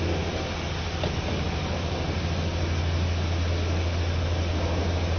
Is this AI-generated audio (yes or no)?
no